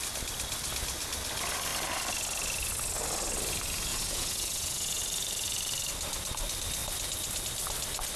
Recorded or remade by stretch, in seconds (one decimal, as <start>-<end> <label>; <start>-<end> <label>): 0.0-3.9 recorded; 3.9-5.0 remade; 5.0-8.2 recorded